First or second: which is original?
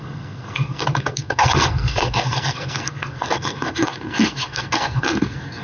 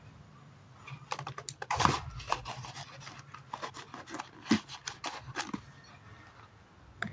second